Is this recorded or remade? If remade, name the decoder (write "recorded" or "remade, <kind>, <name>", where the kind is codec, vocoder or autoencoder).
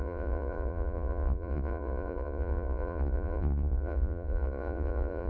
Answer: remade, vocoder, Vocos